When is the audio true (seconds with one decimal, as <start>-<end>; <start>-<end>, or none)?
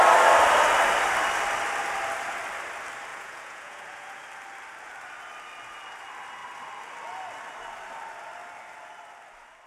0.0-3.1; 4.2-9.7